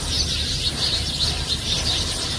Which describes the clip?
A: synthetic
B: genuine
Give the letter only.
B